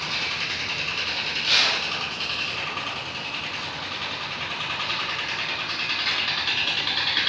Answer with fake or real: real